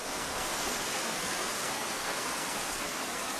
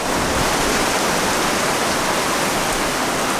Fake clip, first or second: first